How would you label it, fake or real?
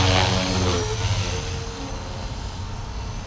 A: real